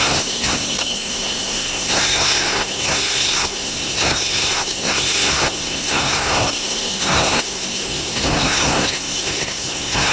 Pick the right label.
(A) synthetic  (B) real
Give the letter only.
A